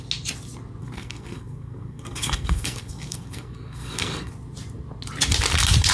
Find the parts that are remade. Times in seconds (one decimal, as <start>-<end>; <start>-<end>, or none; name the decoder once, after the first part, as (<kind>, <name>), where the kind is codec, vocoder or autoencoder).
0.8-4.3 (codec, SNAC)

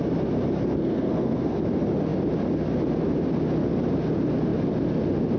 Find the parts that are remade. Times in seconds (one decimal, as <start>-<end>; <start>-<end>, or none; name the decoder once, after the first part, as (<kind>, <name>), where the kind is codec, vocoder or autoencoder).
0.8-1.6 (codec, SNAC)

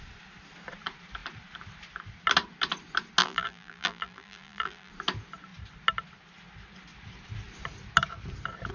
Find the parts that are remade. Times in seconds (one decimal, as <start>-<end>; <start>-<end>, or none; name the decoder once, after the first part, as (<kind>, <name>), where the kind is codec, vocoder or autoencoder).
3.2-4.9 (vocoder, BigVGAN v2)

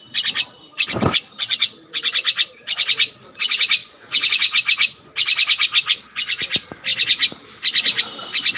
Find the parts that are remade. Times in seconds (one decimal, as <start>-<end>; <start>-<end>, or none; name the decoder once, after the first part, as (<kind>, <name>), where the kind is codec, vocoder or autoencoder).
3.8-5.1 (vocoder, Vocos)